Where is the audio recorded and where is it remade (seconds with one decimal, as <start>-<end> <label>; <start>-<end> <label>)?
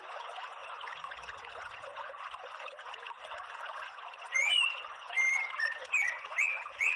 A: 0.0-7.0 remade